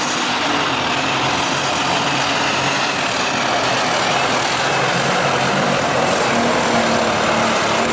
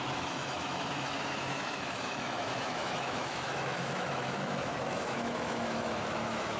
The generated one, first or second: second